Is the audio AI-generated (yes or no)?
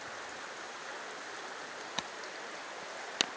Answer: no